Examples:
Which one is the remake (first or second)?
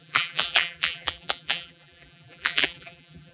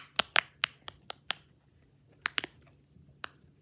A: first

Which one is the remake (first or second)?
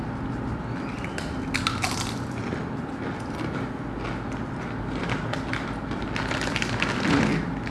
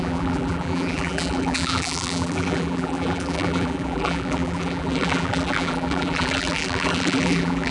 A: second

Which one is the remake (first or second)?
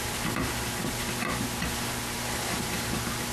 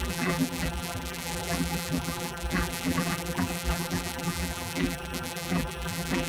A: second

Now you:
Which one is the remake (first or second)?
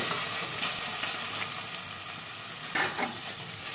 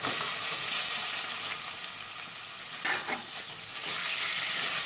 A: first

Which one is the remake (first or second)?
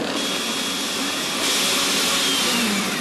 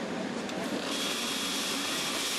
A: second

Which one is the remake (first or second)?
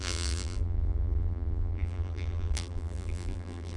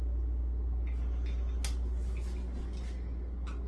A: first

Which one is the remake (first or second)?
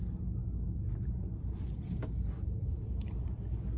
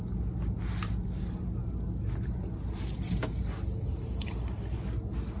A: first